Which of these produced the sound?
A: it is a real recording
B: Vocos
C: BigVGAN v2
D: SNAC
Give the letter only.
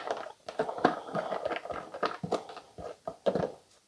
A